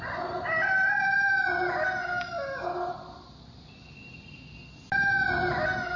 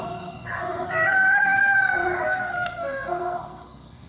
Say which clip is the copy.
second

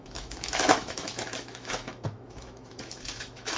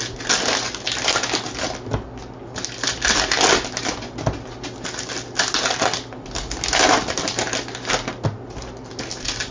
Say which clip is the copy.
first